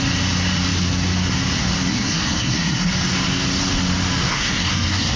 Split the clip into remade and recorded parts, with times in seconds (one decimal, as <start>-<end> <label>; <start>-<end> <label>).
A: 0.0-1.9 recorded; 1.9-2.9 remade; 2.9-4.3 recorded; 4.3-5.2 remade